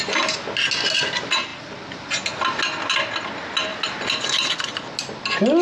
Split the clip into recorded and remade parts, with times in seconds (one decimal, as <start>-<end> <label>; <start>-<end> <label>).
0.0-5.6 recorded